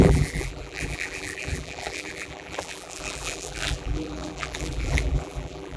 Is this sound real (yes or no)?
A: no